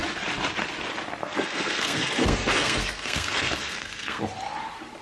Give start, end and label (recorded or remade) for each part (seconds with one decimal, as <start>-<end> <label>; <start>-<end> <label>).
0.0-1.2 recorded; 1.2-4.2 remade; 4.2-5.0 recorded